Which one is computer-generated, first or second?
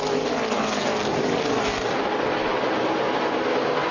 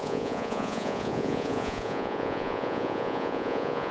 second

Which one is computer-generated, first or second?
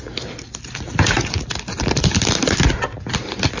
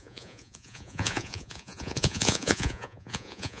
second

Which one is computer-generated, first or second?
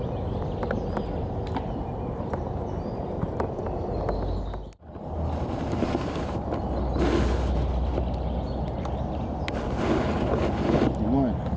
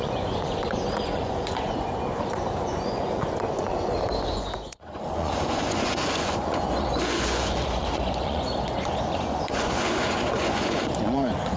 second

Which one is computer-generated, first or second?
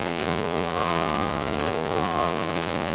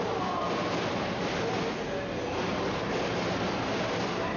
first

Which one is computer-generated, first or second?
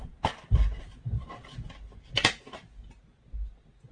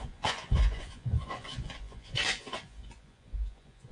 second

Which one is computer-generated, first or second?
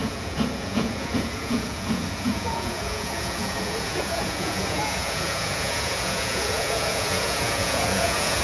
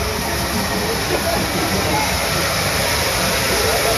first